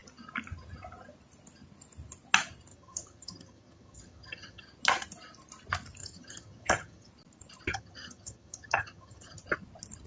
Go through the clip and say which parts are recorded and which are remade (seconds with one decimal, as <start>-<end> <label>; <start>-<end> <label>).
0.0-2.7 recorded; 2.7-4.6 remade; 4.6-6.0 recorded; 6.0-7.1 remade; 7.1-7.7 recorded; 7.7-9.4 remade; 9.4-10.1 recorded